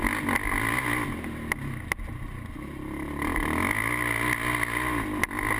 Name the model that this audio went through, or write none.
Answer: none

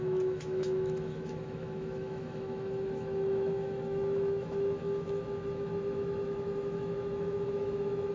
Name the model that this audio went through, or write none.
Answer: autoencoder, DAC-VAE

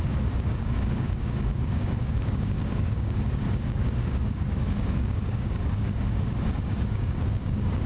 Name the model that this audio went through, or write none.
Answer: codec, DAC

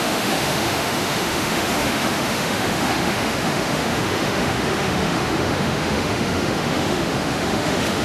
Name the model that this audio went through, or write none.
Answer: autoencoder, DAC-VAE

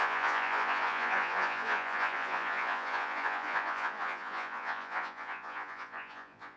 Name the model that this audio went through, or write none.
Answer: vocoder, Vocos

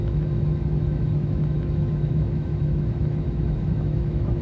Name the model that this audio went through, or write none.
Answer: autoencoder, DAC-VAE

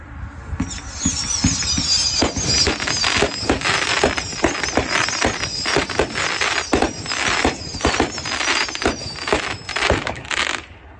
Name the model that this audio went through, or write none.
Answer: none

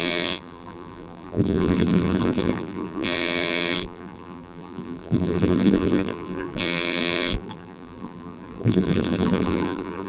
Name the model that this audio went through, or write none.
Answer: vocoder, BigVGAN v2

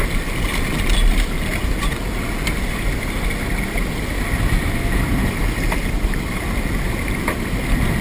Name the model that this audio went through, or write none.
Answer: none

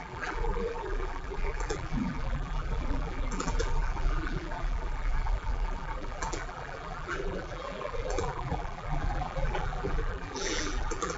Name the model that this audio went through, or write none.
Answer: vocoder, BigVGAN v2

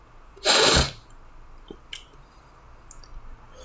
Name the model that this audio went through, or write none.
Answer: none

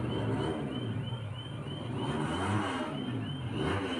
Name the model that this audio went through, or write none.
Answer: none